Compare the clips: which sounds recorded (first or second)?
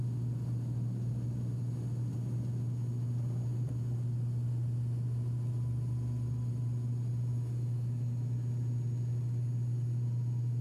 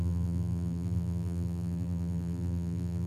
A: first